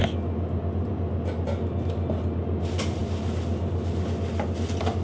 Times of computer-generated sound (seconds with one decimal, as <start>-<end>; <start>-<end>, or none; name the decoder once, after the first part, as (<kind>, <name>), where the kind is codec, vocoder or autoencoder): none

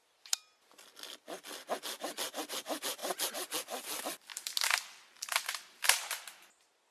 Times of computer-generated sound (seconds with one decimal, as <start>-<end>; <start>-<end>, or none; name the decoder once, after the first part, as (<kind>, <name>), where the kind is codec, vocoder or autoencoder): none